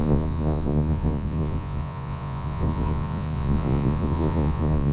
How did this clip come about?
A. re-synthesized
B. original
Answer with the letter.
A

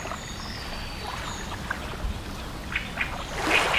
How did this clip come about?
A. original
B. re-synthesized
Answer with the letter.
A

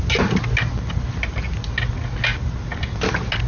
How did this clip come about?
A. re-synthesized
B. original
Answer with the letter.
B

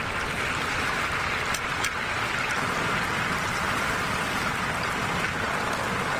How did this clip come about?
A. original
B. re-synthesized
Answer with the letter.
A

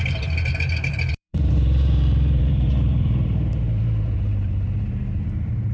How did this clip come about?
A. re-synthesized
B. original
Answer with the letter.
A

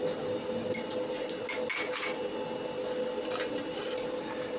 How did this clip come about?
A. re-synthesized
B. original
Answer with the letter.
B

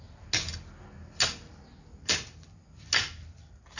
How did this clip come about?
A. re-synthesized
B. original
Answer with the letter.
B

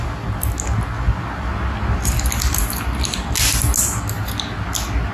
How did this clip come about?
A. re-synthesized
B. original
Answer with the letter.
B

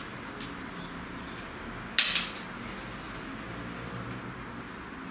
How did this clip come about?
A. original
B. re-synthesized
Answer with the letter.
A